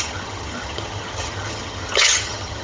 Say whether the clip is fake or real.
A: fake